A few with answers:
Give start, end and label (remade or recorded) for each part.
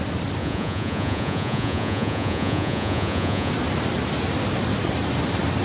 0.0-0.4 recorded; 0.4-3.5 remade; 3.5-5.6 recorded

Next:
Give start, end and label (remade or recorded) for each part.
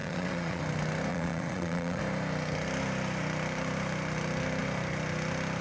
0.0-0.6 remade; 0.6-1.1 recorded; 1.1-2.0 remade; 2.0-5.6 recorded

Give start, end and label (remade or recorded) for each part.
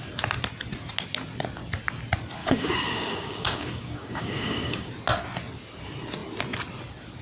0.0-2.4 recorded; 2.4-4.9 remade; 4.9-7.2 recorded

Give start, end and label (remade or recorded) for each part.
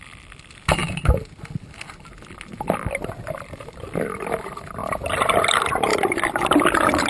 0.0-4.8 recorded; 4.8-5.4 remade; 5.4-5.9 recorded; 5.9-7.1 remade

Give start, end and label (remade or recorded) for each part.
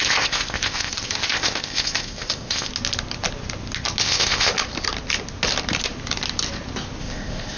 0.0-2.7 remade; 2.7-4.0 recorded; 4.0-4.5 remade; 4.5-7.0 recorded; 7.0-7.6 remade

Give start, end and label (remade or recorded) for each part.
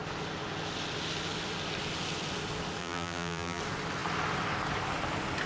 0.0-2.8 recorded; 2.8-3.6 remade; 3.6-5.5 recorded